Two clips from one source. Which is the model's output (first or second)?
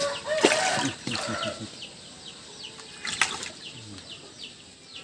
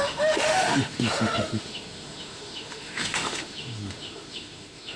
second